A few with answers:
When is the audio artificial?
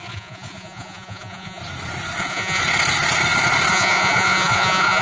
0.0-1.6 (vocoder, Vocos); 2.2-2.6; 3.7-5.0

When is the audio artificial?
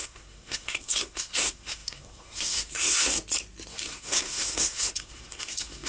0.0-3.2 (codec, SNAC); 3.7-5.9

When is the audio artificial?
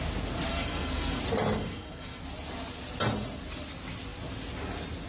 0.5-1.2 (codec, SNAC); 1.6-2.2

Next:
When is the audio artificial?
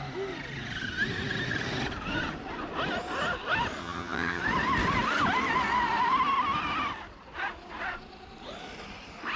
3.8-4.4 (vocoder, HiFi-GAN)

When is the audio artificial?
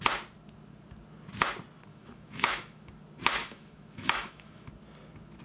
1.9-2.9 (autoencoder, DAC-VAE); 3.4-4.7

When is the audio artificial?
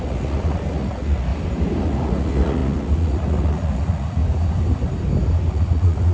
0.0-1.3 (vocoder, Vocos); 1.8-4.2; 5.5-6.1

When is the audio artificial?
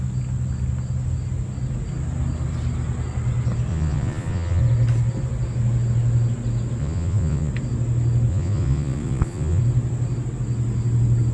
3.7-4.6 (vocoder, Vocos); 6.8-7.5; 8.3-9.6